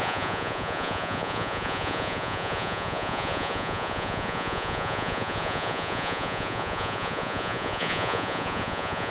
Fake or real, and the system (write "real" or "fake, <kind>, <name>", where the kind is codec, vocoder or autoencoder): fake, vocoder, Vocos